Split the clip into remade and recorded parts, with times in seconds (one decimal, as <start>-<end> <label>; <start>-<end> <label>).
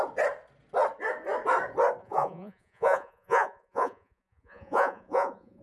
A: 0.0-2.0 recorded; 2.0-5.6 remade